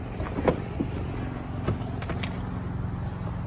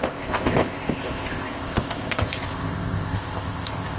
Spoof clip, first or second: second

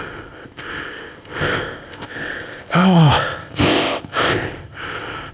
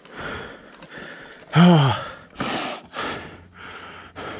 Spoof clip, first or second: first